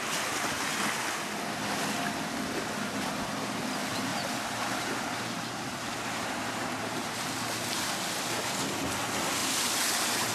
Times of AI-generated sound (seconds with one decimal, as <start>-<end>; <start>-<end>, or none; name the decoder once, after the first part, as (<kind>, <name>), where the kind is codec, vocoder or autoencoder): 4.1-7.3 (vocoder, BigVGAN v2); 9.4-10.3